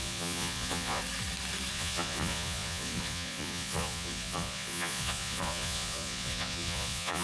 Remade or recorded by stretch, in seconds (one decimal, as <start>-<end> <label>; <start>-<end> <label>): 0.0-1.0 remade; 1.0-1.7 recorded; 1.7-7.2 remade